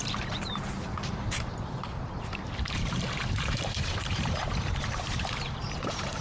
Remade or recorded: remade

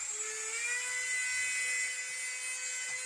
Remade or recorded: recorded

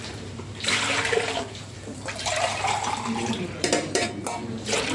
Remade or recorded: remade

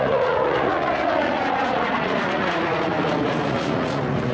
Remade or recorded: remade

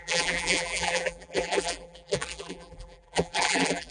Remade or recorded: remade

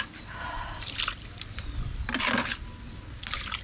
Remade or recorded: recorded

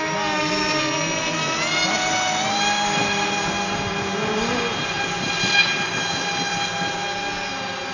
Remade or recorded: recorded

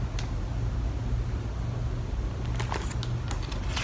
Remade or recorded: recorded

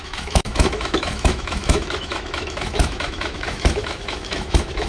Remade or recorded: remade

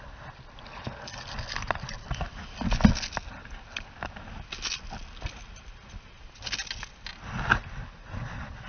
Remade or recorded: recorded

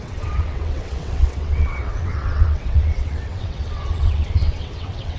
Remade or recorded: remade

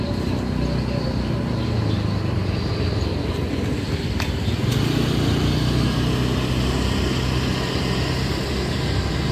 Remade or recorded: recorded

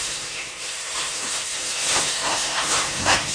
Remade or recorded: remade